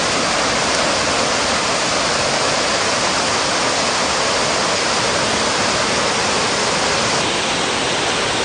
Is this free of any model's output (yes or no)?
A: yes